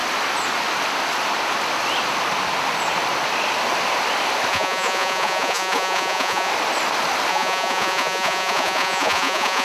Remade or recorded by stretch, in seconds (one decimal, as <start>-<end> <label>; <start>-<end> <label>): 0.0-4.5 recorded; 4.5-6.5 remade; 6.5-7.3 recorded; 7.3-9.6 remade